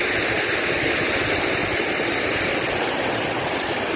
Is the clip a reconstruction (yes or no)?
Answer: no